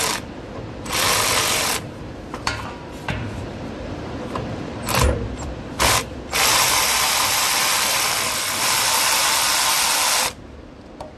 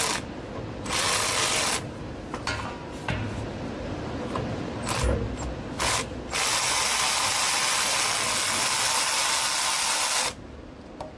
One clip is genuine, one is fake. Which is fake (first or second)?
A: first